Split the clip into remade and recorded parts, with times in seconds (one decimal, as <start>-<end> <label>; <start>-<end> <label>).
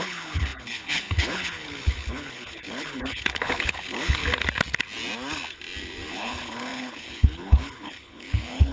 0.0-4.2 remade; 4.2-6.1 recorded; 6.1-8.7 remade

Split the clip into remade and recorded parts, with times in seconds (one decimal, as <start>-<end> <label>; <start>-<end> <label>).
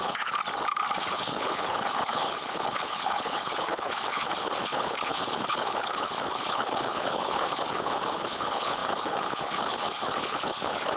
0.0-0.4 remade; 0.4-1.0 recorded; 1.0-11.0 remade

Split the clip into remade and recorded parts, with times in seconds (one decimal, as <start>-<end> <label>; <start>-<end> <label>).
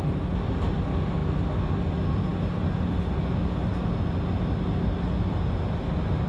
0.0-6.3 recorded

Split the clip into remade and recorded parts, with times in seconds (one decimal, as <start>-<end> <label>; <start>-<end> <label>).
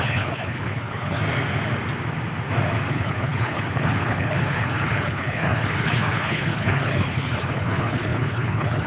0.0-1.2 remade; 1.2-2.9 recorded; 2.9-8.9 remade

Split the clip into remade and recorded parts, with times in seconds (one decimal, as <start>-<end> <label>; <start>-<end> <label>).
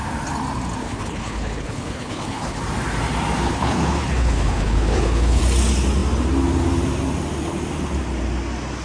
0.0-0.8 recorded; 0.8-2.6 remade; 2.6-3.5 recorded; 3.5-5.4 remade; 5.4-8.8 recorded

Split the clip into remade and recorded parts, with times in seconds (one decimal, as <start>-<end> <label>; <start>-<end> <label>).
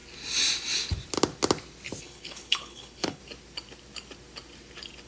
0.0-2.0 recorded; 2.0-3.2 remade; 3.2-5.1 recorded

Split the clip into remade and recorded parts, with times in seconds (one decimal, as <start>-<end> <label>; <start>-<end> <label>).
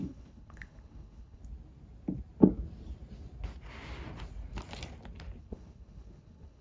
0.0-1.4 remade; 1.4-5.4 recorded; 5.4-6.6 remade